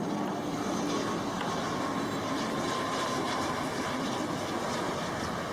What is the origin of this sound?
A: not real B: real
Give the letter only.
B